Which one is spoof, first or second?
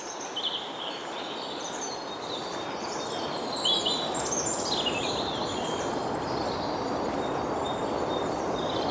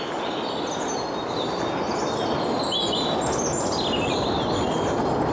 first